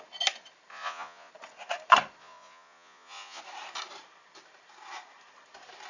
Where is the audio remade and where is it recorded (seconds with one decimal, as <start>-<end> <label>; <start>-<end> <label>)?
0.0-0.7 recorded; 0.7-1.3 remade; 1.3-2.2 recorded; 2.2-3.4 remade; 3.4-5.9 recorded